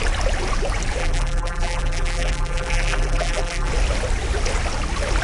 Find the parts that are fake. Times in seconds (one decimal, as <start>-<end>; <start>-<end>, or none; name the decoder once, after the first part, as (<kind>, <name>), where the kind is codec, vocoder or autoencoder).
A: 1.0-3.7 (vocoder, BigVGAN v2)